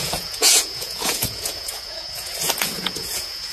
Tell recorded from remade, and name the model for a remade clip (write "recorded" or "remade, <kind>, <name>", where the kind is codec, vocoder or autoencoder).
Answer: remade, vocoder, Vocos